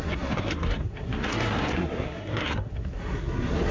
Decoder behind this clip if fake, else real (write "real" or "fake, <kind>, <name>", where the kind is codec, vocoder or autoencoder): fake, codec, SNAC